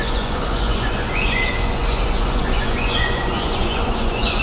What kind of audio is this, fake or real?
fake